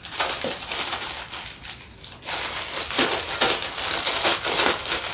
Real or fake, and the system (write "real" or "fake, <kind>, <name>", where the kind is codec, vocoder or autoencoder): real